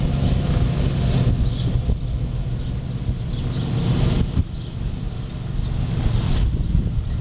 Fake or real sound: real